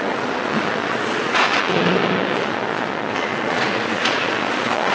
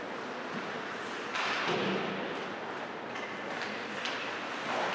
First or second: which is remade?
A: first